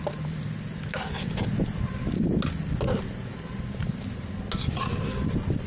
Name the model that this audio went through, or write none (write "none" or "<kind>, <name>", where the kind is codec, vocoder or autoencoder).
none